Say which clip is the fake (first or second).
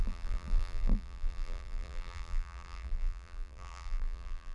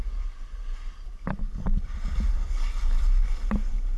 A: first